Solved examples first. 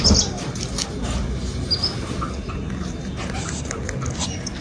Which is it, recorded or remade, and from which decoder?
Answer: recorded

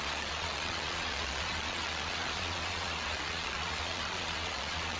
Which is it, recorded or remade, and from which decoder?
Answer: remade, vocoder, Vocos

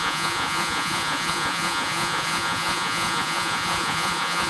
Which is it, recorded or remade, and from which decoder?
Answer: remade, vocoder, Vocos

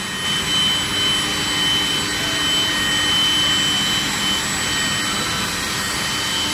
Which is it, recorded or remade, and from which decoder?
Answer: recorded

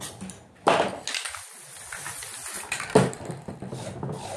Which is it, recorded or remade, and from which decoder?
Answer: recorded